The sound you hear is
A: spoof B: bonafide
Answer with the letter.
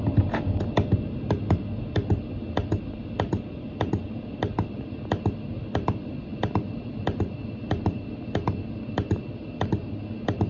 B